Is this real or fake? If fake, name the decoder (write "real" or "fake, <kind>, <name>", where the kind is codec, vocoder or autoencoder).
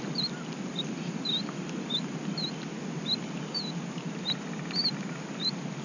real